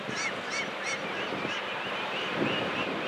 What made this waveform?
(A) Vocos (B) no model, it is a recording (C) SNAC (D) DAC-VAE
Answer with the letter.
B